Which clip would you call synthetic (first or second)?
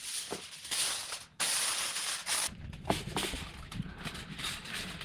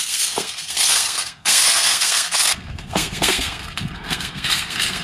second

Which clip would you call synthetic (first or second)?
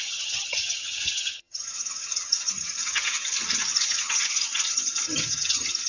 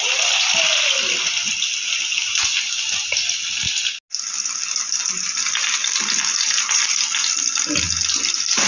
first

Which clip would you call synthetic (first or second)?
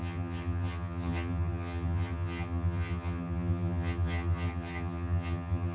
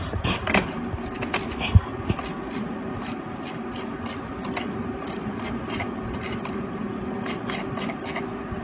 first